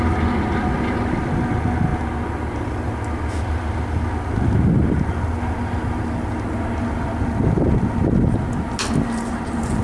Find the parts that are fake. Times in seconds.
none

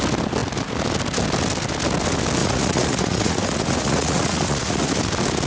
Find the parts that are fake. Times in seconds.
2.4-4.9 (vocoder, Vocos)

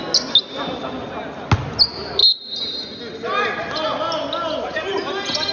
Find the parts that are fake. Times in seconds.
none

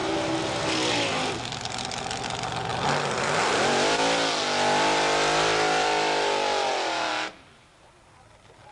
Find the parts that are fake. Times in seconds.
none

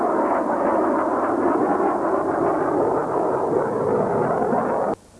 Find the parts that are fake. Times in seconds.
none

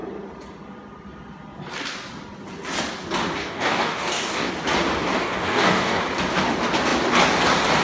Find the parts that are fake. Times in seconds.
3.4-4.5 (codec, DAC); 5.2-6.0